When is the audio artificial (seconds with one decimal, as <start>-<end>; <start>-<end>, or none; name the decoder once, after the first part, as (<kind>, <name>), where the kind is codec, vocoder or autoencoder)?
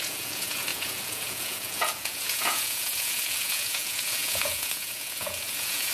0.0-5.9 (vocoder, Vocos)